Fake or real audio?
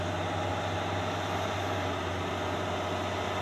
real